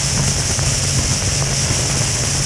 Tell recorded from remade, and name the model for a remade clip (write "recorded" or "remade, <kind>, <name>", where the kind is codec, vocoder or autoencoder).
recorded